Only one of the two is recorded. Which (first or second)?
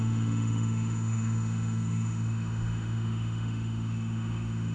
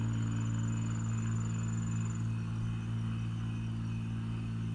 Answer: second